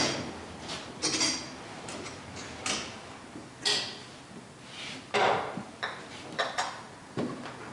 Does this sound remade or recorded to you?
recorded